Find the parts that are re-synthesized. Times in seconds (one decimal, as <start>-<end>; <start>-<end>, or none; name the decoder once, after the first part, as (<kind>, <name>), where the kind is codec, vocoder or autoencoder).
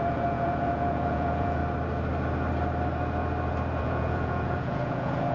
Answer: 0.0-1.6 (vocoder, Vocos); 3.8-5.3